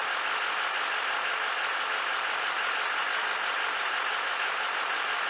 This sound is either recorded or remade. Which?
recorded